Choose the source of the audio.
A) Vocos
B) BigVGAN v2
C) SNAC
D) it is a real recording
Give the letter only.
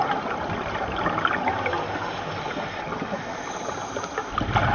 D